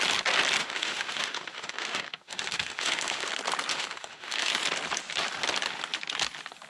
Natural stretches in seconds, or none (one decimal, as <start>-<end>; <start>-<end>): 0.0-0.6; 3.3-3.7; 4.5-6.7